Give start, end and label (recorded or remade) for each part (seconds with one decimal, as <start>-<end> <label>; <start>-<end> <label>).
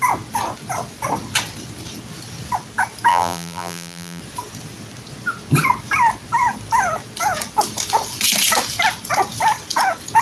0.0-3.1 recorded; 3.1-4.2 remade; 4.2-10.2 recorded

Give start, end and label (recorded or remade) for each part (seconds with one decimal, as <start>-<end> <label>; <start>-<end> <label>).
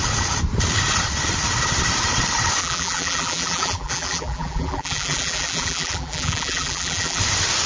0.0-2.6 recorded; 2.6-7.2 remade; 7.2-7.7 recorded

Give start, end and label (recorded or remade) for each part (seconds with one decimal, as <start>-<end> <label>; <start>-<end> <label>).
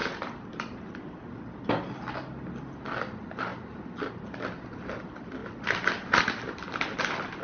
0.0-1.0 remade; 1.0-3.5 recorded; 3.5-4.1 remade; 4.1-7.4 recorded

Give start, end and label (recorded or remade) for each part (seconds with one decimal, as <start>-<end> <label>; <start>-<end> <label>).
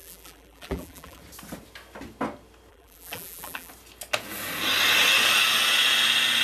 0.0-1.2 remade; 1.2-2.7 recorded; 2.7-3.7 remade; 3.7-6.4 recorded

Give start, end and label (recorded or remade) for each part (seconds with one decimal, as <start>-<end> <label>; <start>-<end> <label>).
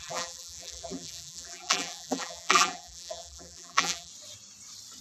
0.0-4.1 remade; 4.1-5.0 recorded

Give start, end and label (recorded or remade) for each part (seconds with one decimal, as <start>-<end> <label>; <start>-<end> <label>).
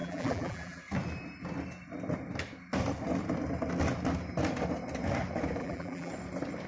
0.0-0.8 remade; 0.8-5.6 recorded; 5.6-6.1 remade; 6.1-6.7 recorded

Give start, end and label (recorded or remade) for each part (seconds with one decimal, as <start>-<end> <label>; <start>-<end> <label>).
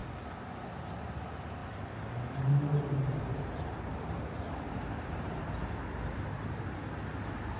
0.0-1.6 recorded; 1.6-5.4 remade; 5.4-7.6 recorded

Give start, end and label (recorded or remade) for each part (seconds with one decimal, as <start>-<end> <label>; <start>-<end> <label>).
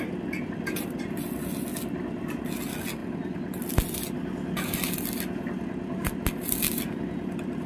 0.0-7.7 recorded